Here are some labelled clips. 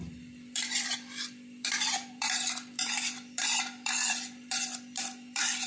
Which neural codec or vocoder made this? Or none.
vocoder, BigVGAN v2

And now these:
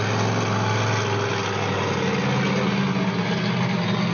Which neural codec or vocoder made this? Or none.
none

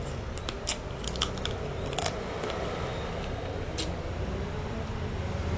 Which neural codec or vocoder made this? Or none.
none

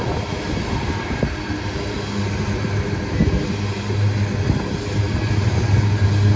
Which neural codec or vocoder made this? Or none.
none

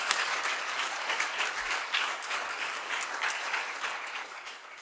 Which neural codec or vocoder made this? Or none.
codec, DAC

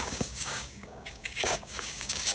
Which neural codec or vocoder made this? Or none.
codec, DAC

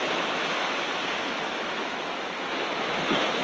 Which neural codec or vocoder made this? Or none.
autoencoder, DAC-VAE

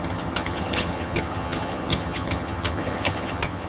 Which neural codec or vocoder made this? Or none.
vocoder, HiFi-GAN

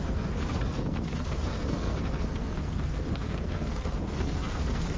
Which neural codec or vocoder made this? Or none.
codec, SNAC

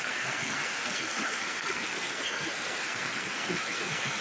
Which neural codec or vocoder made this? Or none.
codec, SNAC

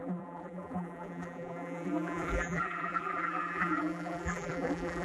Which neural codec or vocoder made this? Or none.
vocoder, BigVGAN v2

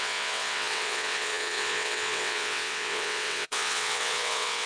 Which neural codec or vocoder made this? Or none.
vocoder, WaveNeXt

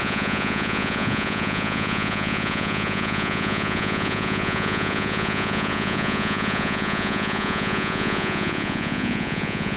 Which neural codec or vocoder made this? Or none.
vocoder, Vocos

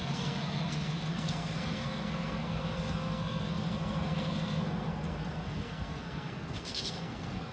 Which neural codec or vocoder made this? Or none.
codec, SNAC